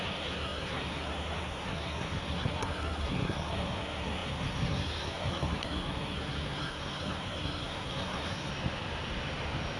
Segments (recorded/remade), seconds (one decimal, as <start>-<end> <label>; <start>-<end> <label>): 0.0-8.5 remade; 8.5-9.8 recorded